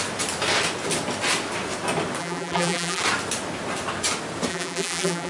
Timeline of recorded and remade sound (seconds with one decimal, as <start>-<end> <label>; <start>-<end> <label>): 0.0-2.2 recorded; 2.2-3.0 remade; 3.0-4.5 recorded; 4.5-5.3 remade